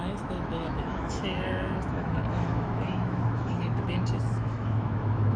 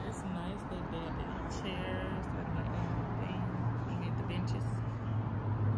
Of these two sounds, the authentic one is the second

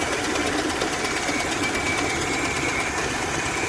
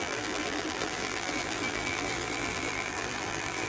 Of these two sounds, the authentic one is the first